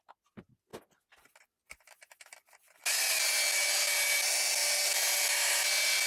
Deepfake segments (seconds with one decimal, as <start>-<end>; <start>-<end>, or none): none